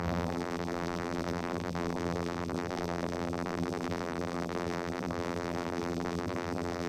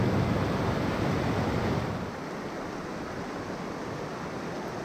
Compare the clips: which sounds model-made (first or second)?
first